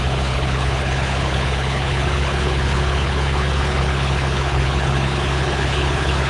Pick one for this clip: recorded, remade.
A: remade